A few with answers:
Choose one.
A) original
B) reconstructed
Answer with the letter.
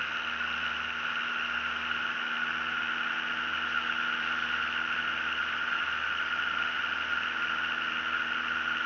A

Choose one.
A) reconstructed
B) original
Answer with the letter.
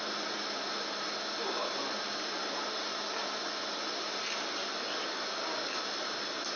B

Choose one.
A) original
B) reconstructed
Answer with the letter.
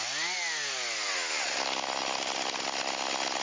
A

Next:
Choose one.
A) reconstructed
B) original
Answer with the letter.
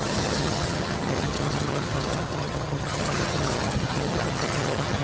A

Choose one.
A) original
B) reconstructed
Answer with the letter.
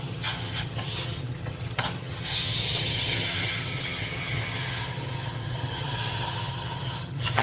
B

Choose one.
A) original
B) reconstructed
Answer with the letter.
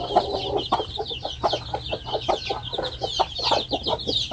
A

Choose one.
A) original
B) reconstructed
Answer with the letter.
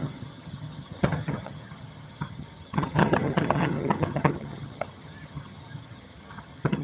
B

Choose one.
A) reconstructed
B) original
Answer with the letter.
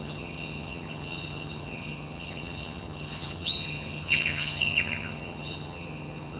A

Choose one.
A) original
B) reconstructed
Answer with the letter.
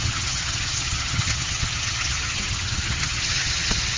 B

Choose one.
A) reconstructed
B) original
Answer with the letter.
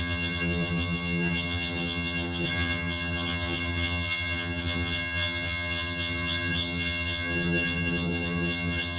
A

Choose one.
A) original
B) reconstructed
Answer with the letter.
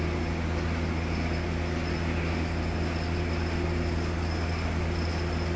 A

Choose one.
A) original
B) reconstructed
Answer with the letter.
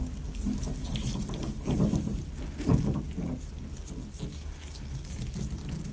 A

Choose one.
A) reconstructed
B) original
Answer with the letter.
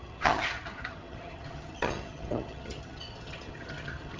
A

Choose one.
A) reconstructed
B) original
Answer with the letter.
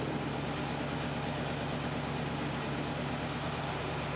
B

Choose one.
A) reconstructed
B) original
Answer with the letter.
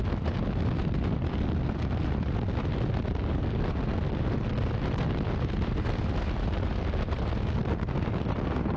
B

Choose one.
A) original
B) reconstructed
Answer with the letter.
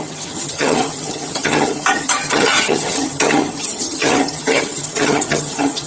B